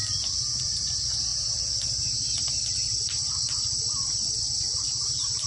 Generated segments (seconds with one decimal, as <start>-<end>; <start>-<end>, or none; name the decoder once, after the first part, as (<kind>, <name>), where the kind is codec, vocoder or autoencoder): 0.6-1.3 (vocoder, BigVGAN v2); 4.6-5.5